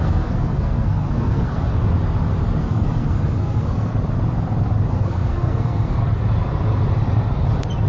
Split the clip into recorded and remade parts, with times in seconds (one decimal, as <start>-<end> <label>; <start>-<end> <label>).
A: 0.0-1.7 remade; 1.7-2.6 recorded; 2.6-3.9 remade; 3.9-4.9 recorded; 4.9-6.0 remade; 6.0-7.9 recorded